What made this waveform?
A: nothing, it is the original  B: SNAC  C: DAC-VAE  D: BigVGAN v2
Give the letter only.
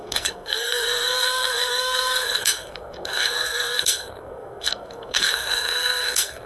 B